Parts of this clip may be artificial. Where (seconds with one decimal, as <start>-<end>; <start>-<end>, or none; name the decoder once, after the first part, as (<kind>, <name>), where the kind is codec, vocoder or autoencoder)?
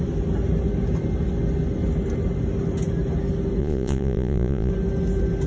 3.6-4.7 (vocoder, Vocos)